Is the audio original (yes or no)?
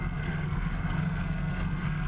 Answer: no